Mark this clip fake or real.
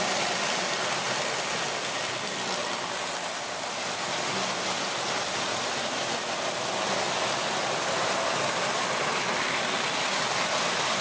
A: real